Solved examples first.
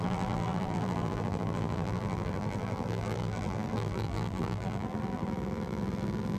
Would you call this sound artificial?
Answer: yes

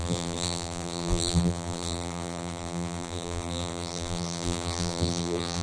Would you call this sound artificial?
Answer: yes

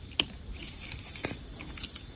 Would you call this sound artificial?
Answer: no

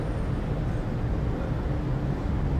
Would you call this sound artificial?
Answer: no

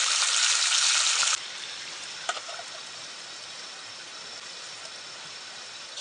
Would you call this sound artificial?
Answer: no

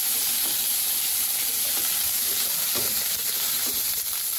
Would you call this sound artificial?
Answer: yes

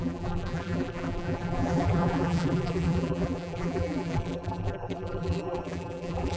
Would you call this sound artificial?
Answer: yes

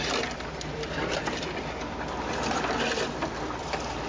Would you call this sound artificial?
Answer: yes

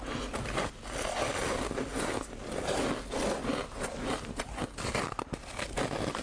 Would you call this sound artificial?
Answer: no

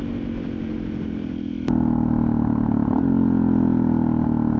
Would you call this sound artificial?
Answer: no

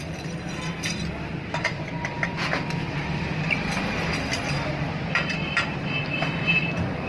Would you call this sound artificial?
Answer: yes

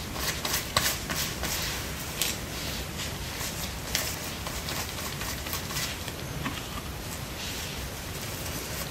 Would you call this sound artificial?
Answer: yes